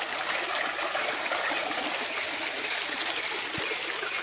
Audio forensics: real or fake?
real